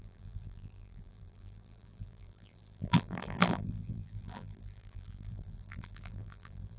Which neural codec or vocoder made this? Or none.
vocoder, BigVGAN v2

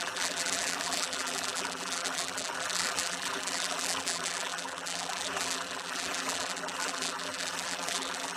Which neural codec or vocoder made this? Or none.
vocoder, BigVGAN v2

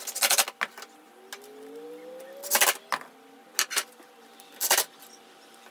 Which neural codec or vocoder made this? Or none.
none